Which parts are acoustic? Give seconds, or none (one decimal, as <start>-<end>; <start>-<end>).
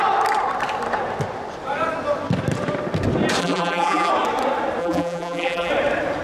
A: 0.0-3.4; 4.1-4.8; 5.7-6.2